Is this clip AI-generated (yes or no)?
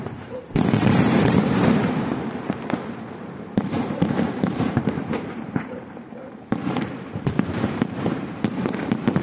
yes